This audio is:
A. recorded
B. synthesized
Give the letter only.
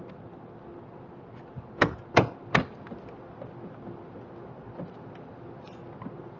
A